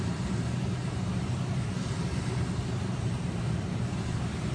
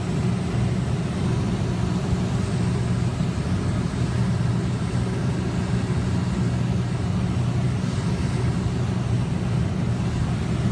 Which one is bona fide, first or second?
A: second